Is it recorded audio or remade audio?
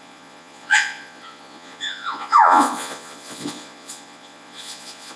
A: remade